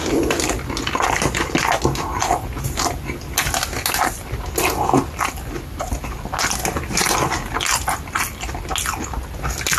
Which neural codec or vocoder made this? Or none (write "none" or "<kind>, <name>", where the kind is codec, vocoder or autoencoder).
none